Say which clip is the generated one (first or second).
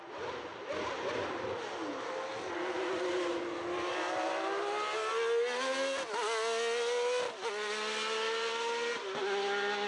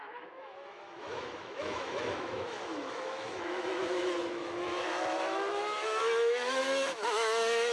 second